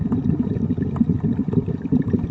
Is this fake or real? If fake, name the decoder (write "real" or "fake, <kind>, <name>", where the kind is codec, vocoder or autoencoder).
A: real